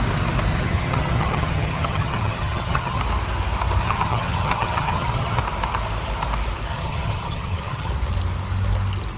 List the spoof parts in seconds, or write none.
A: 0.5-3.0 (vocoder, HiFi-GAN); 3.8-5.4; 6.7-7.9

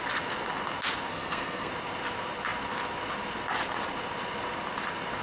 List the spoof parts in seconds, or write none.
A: 1.1-1.7 (codec, SNAC)

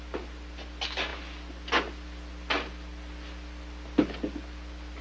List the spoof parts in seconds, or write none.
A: none

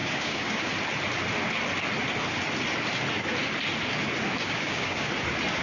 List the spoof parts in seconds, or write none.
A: 0.0-0.7 (codec, DAC); 4.4-5.1

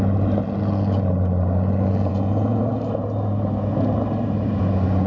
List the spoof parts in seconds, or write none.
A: 2.1-2.6 (vocoder, Vocos)

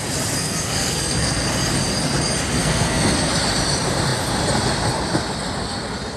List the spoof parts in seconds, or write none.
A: 0.4-1.5 (codec, SNAC); 2.6-3.3

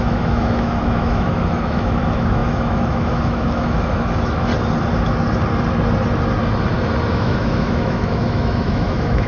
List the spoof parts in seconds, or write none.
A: 0.0-4.5 (autoencoder, DAC-VAE); 7.1-9.3